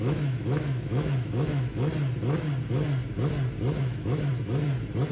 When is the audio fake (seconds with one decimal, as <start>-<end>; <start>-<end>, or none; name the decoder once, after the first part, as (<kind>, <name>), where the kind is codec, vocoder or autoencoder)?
0.0-1.9 (autoencoder, DAC-VAE); 3.8-4.3